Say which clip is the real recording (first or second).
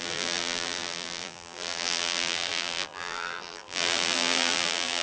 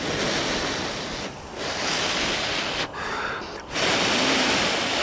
second